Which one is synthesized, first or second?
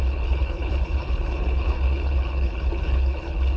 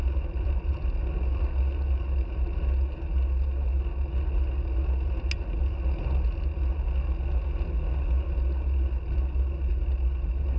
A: first